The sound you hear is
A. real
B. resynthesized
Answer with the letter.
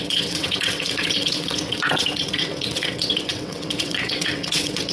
B